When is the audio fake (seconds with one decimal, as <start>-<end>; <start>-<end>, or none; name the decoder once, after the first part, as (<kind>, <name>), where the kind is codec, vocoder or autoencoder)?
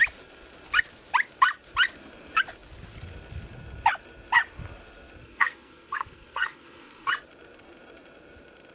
5.2-7.1 (codec, SNAC)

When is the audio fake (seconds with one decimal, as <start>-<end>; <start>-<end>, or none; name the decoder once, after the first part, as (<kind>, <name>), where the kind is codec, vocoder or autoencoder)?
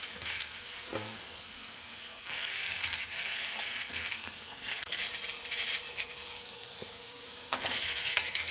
0.0-5.0 (codec, SNAC); 5.9-8.5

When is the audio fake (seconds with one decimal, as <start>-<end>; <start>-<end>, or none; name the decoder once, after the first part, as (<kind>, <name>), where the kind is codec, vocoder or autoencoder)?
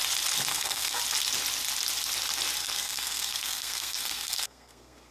0.5-1.0 (codec, SNAC); 2.6-5.1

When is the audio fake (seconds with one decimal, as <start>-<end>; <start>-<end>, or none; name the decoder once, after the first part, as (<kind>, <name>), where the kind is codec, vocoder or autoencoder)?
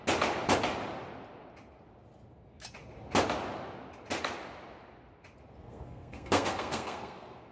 5.6-7.5 (codec, SNAC)